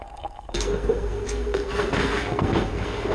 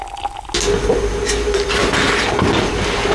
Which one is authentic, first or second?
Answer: second